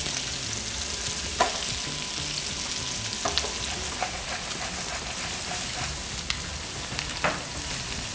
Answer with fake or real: real